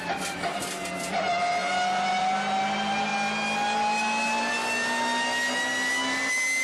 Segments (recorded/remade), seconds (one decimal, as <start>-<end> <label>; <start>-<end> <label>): 0.0-6.6 recorded